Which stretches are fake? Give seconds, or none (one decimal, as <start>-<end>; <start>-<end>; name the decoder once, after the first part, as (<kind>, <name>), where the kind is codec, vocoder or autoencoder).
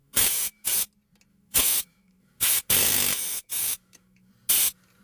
0.0-0.9 (autoencoder, DAC-VAE); 1.3-4.3